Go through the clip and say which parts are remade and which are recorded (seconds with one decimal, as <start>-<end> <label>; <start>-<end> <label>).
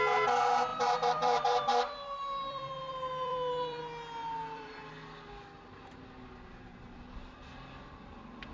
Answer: 0.0-0.7 recorded; 0.7-3.8 remade; 3.8-4.2 recorded; 4.2-4.9 remade; 4.9-8.5 recorded